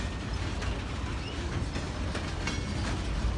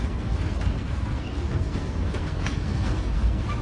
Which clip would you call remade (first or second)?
second